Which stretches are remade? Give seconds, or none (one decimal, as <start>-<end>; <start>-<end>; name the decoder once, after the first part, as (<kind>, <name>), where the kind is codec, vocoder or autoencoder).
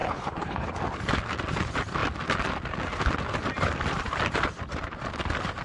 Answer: 0.0-0.7 (codec, HILCodec)